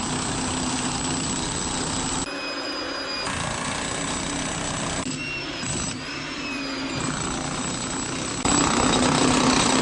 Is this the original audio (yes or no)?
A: yes